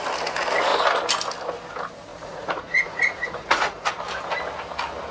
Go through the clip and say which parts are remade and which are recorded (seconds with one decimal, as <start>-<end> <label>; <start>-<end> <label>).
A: 0.0-2.1 recorded; 2.1-3.9 remade; 3.9-5.1 recorded